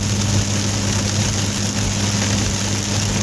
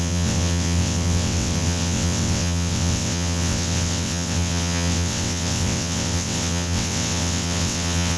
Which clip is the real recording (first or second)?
first